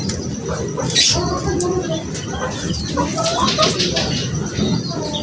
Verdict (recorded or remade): recorded